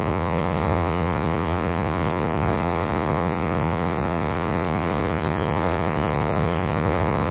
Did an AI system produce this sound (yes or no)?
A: yes